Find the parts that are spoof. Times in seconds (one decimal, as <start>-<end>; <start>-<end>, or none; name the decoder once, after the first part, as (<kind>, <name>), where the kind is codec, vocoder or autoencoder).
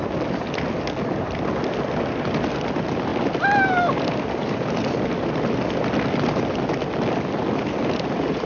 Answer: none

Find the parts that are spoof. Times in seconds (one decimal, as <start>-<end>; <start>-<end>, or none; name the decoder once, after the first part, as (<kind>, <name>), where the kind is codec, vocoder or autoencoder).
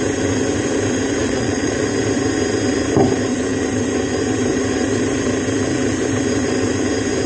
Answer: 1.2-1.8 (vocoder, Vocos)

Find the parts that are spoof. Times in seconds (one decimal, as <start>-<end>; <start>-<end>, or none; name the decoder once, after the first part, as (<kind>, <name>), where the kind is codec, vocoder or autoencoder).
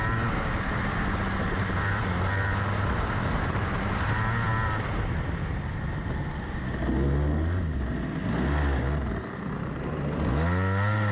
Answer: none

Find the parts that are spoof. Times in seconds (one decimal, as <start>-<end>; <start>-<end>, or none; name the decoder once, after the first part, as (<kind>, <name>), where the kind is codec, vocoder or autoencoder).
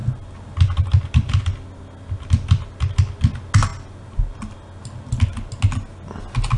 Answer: none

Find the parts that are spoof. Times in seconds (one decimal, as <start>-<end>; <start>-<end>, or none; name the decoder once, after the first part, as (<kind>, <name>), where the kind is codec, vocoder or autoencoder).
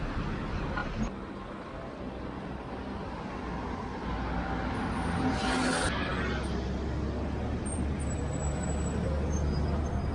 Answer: none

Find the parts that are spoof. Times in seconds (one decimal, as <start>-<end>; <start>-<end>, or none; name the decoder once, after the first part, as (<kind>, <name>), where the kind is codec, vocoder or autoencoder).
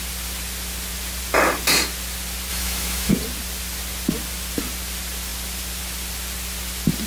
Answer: 2.5-3.1 (autoencoder, DAC-VAE)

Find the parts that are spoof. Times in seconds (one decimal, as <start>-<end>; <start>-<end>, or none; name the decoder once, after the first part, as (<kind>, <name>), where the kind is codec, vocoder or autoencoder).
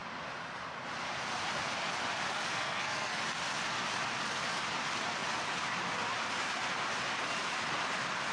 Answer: 2.5-3.2 (codec, SNAC)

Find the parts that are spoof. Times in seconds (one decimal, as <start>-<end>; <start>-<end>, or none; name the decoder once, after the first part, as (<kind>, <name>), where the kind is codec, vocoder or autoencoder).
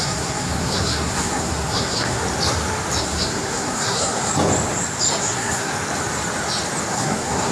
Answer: 0.0-2.2 (codec, SNAC); 3.0-4.3; 5.2-5.7; 6.9-7.5